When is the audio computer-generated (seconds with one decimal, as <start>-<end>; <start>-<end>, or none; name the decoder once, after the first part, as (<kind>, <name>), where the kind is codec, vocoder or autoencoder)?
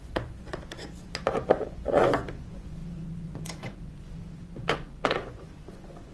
0.0-6.1 (vocoder, Vocos)